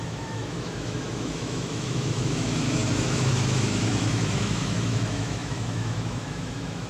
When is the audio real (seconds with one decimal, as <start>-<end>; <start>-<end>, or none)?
none